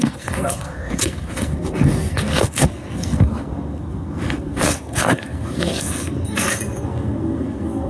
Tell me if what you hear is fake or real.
fake